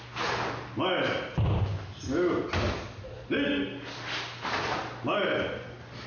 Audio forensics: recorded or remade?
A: recorded